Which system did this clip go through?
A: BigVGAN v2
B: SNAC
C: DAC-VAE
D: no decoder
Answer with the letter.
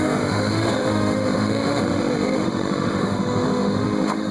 C